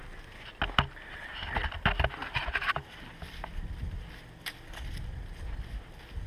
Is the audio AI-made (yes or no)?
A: no